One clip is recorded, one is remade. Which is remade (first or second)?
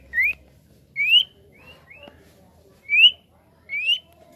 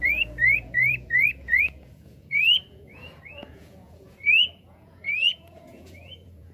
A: second